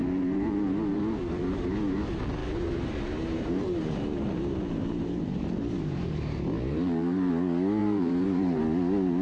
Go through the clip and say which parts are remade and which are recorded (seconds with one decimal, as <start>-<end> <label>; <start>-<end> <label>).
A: 0.0-1.0 remade; 1.0-2.4 recorded; 2.4-7.3 remade; 7.3-7.8 recorded; 7.8-8.6 remade; 8.6-9.2 recorded